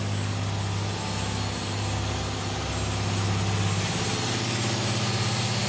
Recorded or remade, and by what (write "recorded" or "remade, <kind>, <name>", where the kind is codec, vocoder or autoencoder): recorded